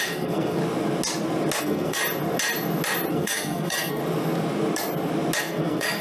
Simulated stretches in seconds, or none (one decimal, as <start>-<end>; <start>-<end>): 0.0-0.6; 1.6-2.0; 3.1-4.0; 5.4-6.0

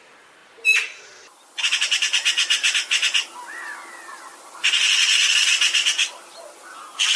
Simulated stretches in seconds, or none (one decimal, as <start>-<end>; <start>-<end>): none